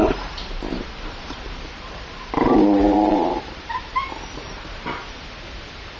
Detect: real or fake fake